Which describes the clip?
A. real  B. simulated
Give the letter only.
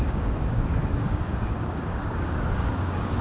B